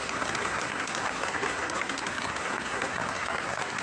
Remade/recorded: remade